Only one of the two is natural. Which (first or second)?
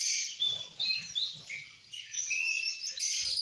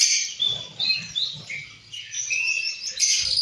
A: second